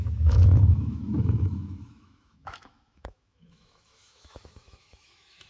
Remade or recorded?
remade